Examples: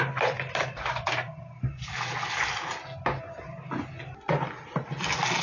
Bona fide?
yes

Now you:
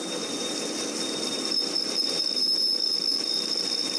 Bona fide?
no